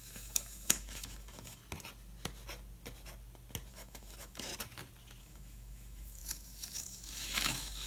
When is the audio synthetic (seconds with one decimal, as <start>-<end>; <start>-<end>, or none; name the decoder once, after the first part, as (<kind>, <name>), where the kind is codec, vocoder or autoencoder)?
0.0-1.6 (autoencoder, DAC-VAE); 3.7-4.5; 5.2-7.9